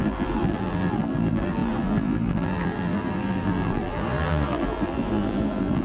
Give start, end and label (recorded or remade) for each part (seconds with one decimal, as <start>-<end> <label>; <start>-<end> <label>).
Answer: 0.0-5.8 remade